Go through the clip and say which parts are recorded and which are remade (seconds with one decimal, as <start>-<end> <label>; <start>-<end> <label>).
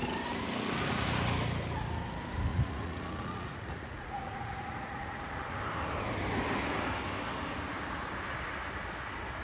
0.0-2.5 recorded; 2.5-5.6 remade; 5.6-9.4 recorded